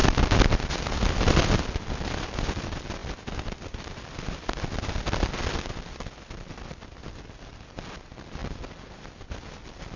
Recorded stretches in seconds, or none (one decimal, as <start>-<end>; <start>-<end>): 0.0-10.0